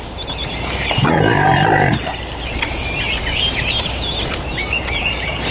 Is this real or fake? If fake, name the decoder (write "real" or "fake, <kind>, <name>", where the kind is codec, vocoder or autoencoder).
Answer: fake, vocoder, BigVGAN v2